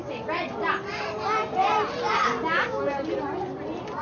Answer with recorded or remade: recorded